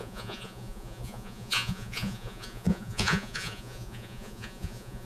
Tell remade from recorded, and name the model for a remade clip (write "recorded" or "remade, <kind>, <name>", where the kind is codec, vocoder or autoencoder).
remade, vocoder, Vocos